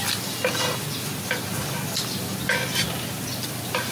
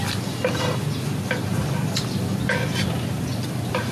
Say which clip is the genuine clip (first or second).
first